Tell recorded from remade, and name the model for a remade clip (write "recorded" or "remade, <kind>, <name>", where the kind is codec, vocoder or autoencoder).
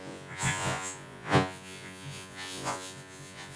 remade, vocoder, Vocos